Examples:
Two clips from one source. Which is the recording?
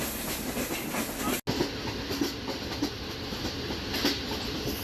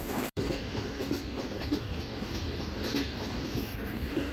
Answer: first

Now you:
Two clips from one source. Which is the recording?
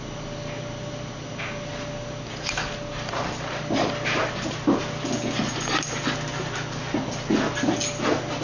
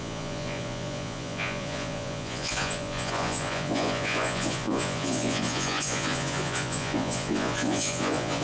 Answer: first